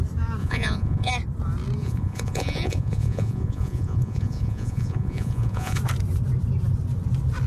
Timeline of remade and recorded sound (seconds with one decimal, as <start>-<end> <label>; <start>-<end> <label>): 0.0-0.4 recorded; 0.4-1.1 remade; 1.1-1.8 recorded; 1.8-5.8 remade; 5.8-7.5 recorded